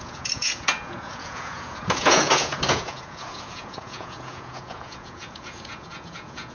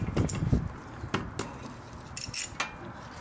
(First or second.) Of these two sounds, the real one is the second